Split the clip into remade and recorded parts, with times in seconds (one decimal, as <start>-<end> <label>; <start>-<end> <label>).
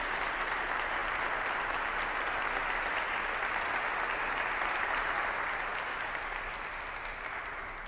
0.0-7.9 recorded